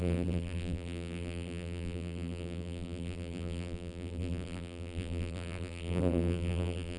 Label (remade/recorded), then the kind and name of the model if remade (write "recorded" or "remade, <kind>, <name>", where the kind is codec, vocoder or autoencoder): remade, vocoder, BigVGAN v2